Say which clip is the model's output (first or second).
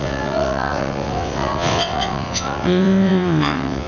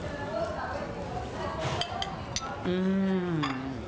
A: first